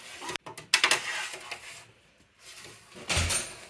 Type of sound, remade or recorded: recorded